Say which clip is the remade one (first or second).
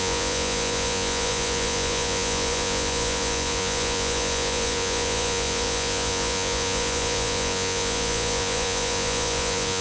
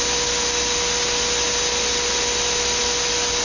first